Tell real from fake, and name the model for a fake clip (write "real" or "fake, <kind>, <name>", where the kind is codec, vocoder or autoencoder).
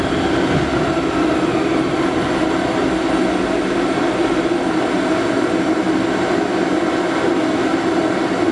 real